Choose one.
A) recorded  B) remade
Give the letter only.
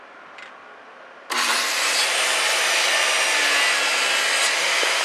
A